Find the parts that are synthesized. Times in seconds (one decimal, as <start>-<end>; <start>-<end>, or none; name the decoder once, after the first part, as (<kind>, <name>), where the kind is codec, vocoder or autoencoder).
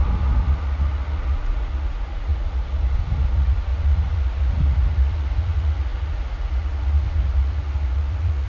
0.0-8.5 (vocoder, Vocos)